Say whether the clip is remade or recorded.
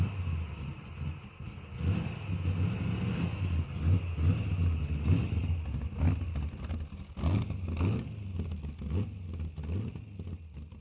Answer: recorded